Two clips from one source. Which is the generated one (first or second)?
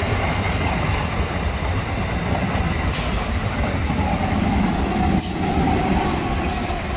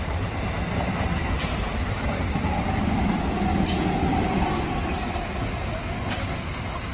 first